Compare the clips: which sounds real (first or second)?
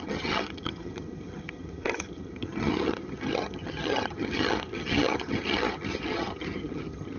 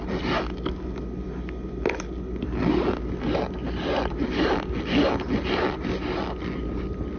second